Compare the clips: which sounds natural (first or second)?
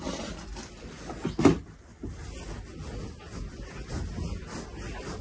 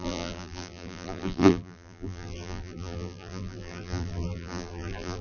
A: first